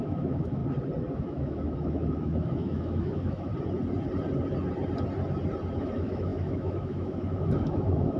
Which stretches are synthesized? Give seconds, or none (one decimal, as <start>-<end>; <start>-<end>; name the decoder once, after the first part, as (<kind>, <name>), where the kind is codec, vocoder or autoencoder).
0.0-0.6 (autoencoder, DAC-VAE); 1.1-3.5; 5.8-8.2